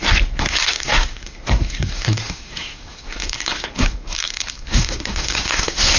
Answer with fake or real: fake